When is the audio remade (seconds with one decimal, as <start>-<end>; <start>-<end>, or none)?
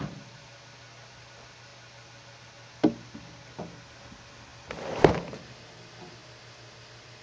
4.5-5.0; 6.2-7.2